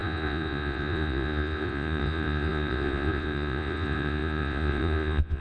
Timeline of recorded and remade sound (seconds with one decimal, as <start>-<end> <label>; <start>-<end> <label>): 0.0-5.4 remade